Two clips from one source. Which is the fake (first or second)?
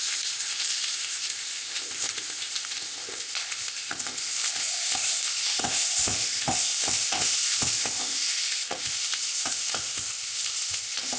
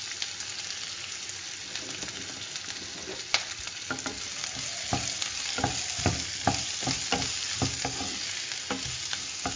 first